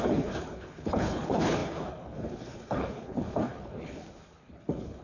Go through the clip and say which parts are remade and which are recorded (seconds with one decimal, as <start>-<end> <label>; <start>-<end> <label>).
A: 0.0-5.0 remade